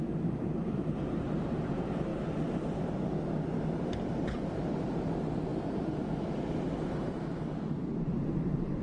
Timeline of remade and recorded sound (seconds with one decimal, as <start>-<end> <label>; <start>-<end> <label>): 0.0-2.1 remade; 2.1-3.9 recorded; 3.9-5.5 remade; 5.5-7.1 recorded; 7.1-8.8 remade